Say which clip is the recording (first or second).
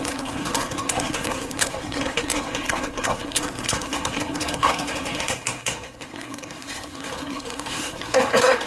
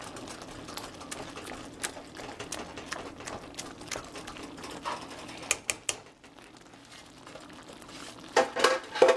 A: second